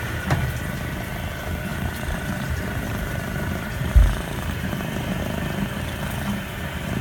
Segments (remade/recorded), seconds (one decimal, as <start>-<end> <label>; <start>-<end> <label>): 0.0-1.7 recorded; 1.7-5.2 remade; 5.2-7.0 recorded